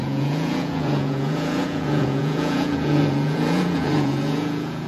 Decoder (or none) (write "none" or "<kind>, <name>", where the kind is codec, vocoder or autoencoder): vocoder, Vocos